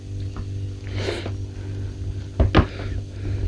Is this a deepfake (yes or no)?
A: no